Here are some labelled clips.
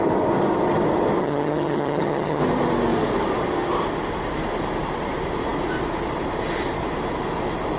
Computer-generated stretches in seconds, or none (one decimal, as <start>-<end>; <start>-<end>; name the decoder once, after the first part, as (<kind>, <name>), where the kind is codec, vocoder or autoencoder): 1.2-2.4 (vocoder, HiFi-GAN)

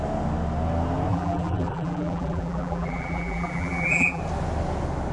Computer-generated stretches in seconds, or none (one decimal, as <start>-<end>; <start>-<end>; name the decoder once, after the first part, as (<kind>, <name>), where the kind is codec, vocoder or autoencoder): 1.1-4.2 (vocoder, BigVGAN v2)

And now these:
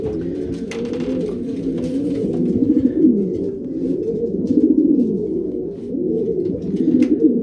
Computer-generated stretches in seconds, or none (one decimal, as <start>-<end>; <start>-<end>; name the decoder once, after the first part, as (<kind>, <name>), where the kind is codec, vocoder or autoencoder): none

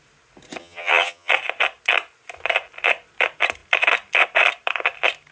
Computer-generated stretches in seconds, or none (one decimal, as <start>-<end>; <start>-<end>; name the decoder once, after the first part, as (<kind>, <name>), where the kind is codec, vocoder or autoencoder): 0.6-1.3 (vocoder, HiFi-GAN)